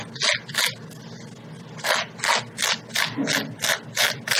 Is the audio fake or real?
real